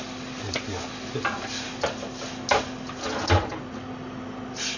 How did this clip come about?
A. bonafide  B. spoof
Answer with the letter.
A